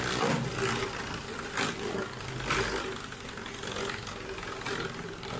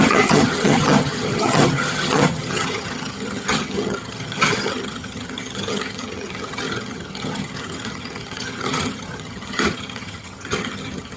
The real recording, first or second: first